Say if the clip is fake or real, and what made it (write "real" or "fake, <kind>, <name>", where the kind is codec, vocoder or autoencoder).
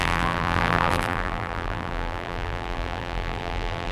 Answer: fake, vocoder, BigVGAN v2